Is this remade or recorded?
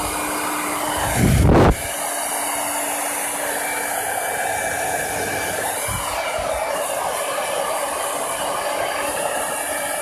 recorded